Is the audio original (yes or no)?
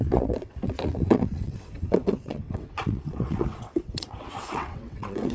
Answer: no